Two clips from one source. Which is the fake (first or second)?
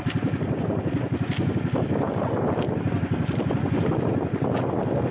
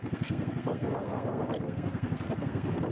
second